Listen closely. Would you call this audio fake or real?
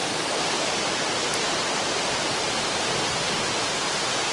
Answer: fake